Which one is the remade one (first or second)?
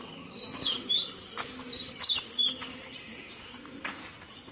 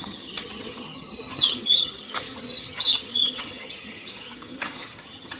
second